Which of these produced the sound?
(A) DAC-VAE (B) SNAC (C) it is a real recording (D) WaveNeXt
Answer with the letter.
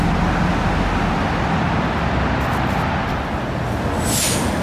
C